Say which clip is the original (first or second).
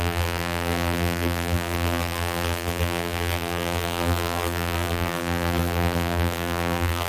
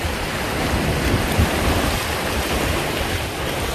second